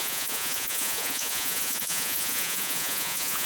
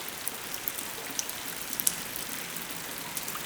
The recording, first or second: second